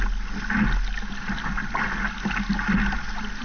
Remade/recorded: recorded